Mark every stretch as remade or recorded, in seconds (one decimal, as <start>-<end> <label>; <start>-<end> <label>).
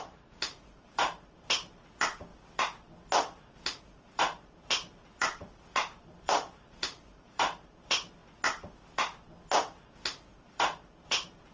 0.0-2.3 remade; 2.3-3.8 recorded; 3.8-8.2 remade; 8.2-10.3 recorded; 10.3-11.5 remade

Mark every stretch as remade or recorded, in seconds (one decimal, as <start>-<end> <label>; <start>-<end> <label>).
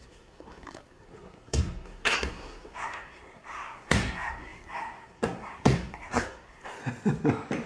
0.0-6.8 remade; 6.8-7.7 recorded